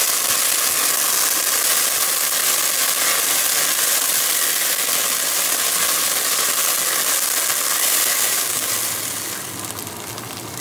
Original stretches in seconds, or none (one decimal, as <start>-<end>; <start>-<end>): 0.0-8.1; 8.7-10.6